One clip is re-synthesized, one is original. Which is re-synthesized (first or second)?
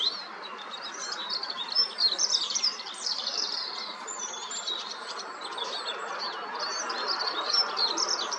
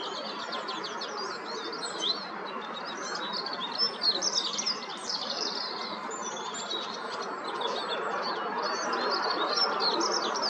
first